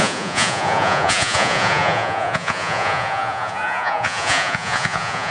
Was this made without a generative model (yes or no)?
no